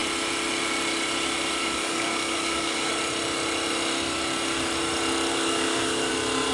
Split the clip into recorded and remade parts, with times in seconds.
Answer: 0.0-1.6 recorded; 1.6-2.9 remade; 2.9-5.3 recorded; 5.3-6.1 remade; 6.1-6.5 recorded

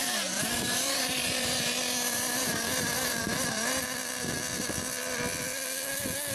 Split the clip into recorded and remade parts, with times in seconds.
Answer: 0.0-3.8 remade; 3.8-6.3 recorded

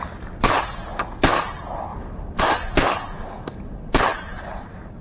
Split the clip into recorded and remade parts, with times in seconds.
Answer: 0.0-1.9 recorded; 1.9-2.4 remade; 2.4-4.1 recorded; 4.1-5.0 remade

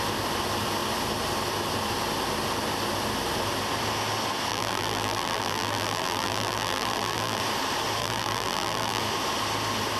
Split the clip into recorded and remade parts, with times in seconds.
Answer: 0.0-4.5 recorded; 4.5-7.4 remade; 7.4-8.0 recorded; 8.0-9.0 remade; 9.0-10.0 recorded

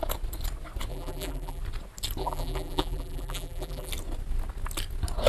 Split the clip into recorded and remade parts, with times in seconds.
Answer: 0.0-0.9 recorded; 0.9-1.6 remade; 1.6-2.2 recorded; 2.2-3.9 remade; 3.9-5.3 recorded

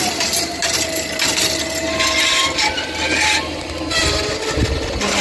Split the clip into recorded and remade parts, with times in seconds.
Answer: 0.0-5.2 recorded